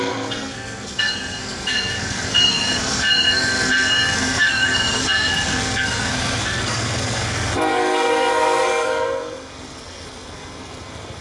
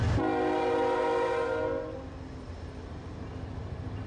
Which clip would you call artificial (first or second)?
first